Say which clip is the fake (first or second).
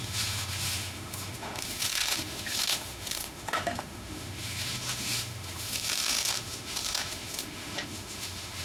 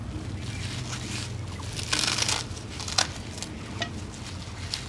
first